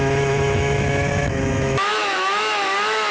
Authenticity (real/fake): fake